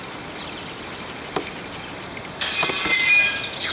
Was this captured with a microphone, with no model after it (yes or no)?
yes